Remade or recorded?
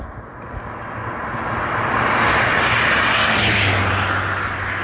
recorded